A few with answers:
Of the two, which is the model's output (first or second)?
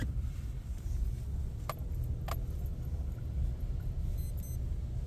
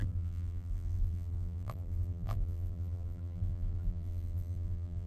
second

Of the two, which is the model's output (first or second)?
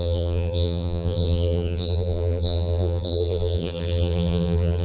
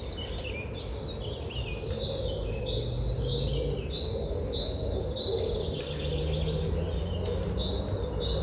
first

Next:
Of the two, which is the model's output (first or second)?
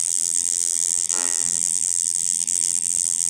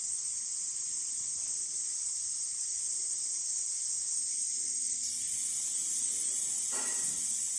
first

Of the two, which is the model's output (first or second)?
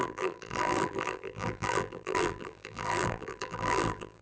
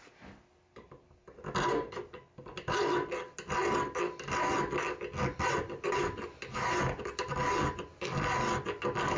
first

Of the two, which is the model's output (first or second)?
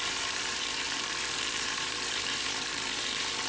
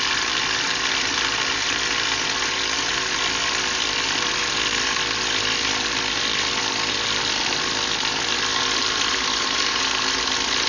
first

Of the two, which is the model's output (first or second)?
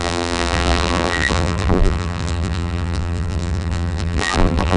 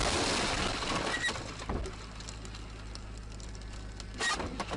first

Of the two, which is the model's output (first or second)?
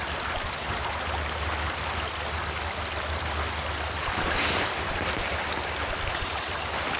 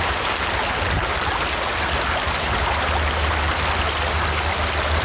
first